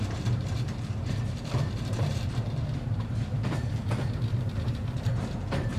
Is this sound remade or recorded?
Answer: remade